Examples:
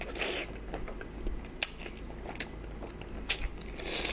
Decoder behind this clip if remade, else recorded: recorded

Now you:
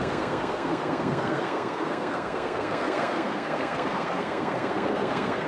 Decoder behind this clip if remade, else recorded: remade, codec, SNAC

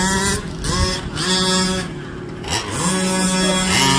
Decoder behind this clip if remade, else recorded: recorded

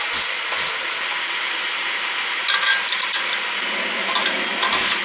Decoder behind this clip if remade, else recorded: recorded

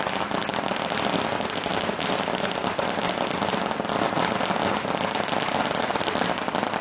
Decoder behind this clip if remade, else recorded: recorded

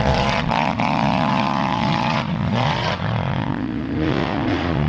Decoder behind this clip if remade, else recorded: remade, vocoder, Vocos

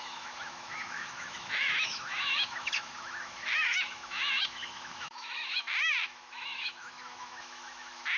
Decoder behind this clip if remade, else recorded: remade, autoencoder, DAC-VAE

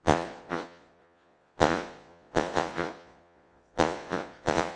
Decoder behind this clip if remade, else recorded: remade, vocoder, Vocos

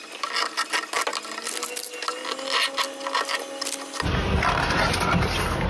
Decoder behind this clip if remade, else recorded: recorded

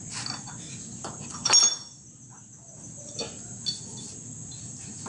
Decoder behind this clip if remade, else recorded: recorded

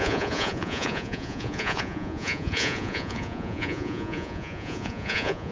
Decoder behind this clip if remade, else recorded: remade, vocoder, Vocos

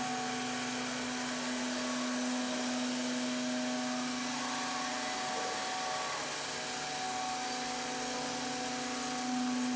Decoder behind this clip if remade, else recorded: recorded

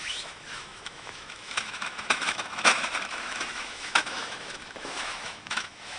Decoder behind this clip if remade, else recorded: remade, autoencoder, DAC-VAE